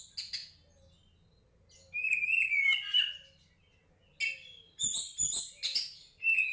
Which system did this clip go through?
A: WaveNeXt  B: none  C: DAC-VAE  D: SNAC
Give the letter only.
B